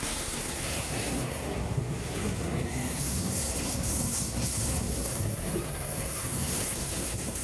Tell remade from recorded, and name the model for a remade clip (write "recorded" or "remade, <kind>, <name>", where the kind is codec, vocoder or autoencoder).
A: remade, codec, SNAC